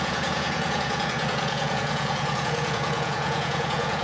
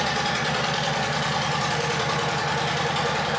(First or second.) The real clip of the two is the second